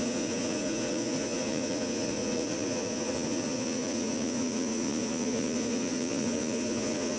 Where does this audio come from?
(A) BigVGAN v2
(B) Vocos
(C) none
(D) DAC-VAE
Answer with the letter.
B